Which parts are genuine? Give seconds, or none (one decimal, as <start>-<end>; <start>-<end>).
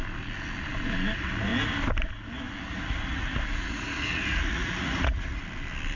0.0-2.7; 5.4-6.0